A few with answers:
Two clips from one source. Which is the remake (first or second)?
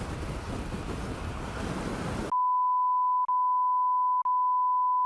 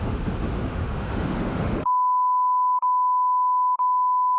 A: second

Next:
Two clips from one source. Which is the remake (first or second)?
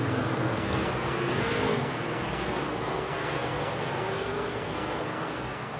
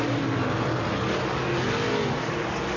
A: first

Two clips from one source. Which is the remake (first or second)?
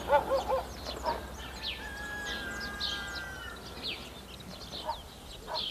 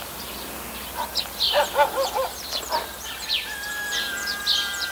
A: second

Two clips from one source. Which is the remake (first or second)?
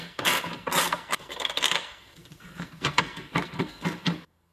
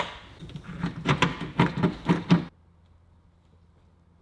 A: first